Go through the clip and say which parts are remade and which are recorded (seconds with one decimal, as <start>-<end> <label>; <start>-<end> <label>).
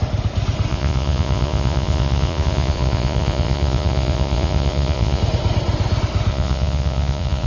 0.0-0.7 recorded; 0.7-5.2 remade; 5.2-6.3 recorded; 6.3-7.5 remade